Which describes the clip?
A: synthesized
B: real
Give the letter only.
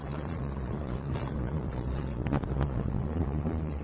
A